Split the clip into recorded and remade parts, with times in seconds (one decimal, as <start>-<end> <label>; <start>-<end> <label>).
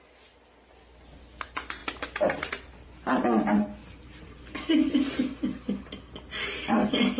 0.0-7.2 recorded